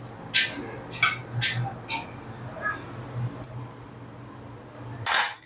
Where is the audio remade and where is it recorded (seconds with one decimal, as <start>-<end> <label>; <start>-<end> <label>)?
0.0-5.5 recorded